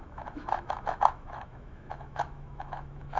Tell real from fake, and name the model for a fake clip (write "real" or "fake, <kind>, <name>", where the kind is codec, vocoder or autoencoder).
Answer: fake, autoencoder, DAC-VAE